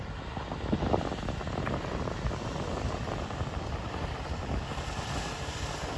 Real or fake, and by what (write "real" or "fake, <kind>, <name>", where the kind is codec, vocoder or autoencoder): real